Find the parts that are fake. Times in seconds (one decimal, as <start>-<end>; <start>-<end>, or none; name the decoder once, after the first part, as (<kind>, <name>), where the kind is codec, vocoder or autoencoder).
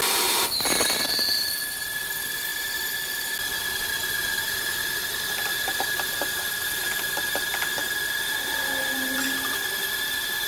none